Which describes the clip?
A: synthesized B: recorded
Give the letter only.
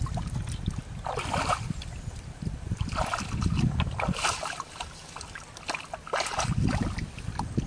B